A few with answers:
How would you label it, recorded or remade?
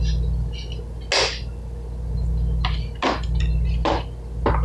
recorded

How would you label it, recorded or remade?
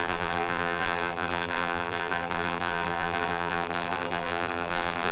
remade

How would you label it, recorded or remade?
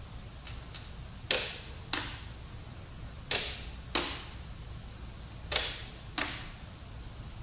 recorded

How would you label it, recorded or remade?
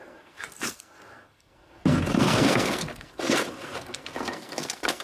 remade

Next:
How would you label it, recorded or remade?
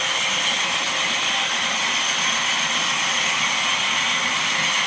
recorded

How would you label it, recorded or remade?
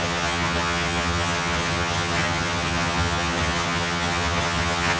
remade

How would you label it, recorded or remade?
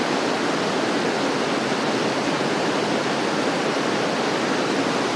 recorded